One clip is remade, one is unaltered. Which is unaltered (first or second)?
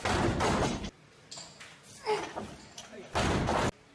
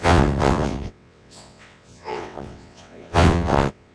first